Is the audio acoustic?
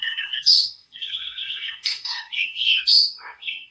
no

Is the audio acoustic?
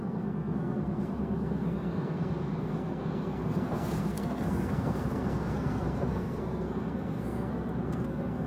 no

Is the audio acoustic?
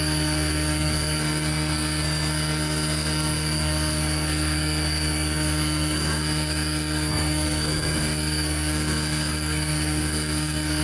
no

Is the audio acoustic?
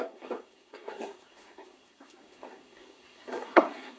no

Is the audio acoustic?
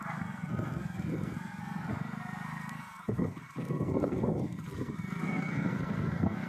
no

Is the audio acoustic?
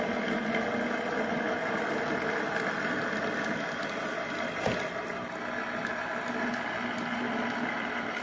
yes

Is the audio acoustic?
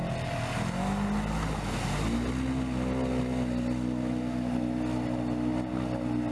yes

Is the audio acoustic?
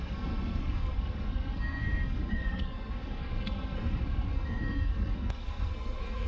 no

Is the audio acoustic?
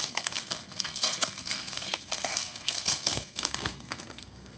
no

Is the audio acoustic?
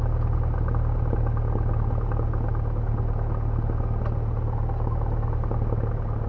yes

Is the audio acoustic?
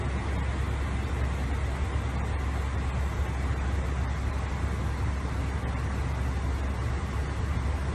yes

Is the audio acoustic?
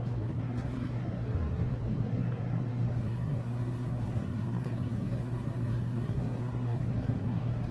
no